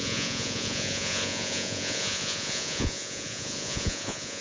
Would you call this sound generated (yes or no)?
yes